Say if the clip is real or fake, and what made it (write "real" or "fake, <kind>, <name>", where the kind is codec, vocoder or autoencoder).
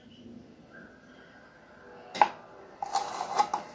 fake, vocoder, BigVGAN v2